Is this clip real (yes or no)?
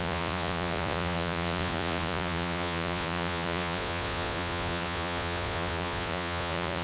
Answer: no